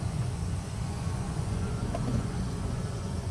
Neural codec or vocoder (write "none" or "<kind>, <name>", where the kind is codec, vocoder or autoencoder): vocoder, Vocos